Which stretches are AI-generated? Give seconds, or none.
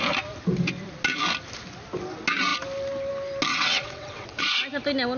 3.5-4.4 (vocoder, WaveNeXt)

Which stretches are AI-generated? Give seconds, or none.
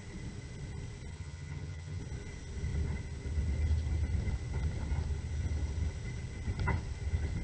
1.1-2.0 (vocoder, HiFi-GAN)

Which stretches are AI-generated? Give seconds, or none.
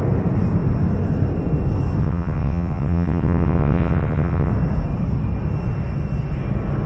2.0-4.5 (vocoder, WaveNeXt)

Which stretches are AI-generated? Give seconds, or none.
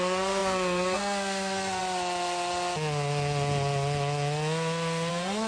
0.0-1.8 (codec, SNAC); 5.1-5.5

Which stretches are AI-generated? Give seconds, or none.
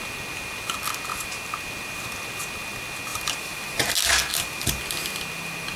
3.1-3.9 (vocoder, BigVGAN v2); 4.3-4.8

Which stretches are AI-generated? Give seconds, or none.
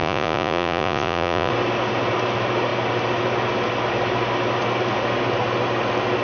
0.0-1.5 (vocoder, Vocos)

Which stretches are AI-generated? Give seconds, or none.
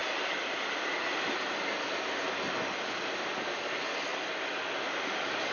none